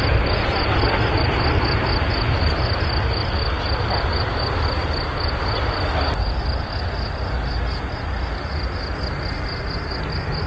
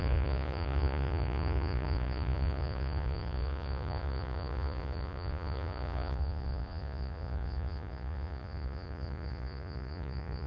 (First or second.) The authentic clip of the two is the first